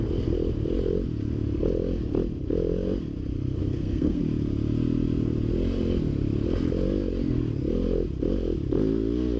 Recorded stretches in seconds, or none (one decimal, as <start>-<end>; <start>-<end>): 0.0-3.6; 4.2-9.4